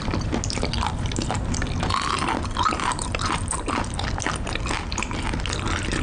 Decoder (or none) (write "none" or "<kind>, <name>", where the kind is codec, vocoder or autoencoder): none